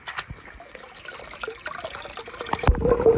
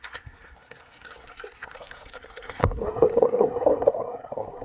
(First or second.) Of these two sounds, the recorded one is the first